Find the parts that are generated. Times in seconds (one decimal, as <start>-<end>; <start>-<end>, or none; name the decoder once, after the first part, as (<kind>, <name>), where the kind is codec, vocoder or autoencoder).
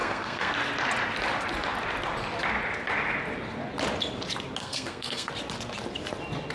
0.0-0.5 (codec, SNAC); 4.6-5.3